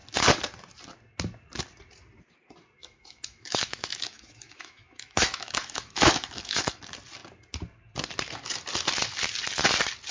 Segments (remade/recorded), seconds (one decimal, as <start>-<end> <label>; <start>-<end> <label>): 0.0-2.8 recorded; 2.8-6.8 remade; 6.8-10.1 recorded